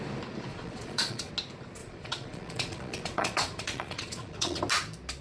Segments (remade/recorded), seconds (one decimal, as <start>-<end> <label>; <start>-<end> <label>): 0.0-0.5 recorded; 0.5-1.3 remade; 1.3-1.8 recorded; 1.8-4.6 remade; 4.6-5.2 recorded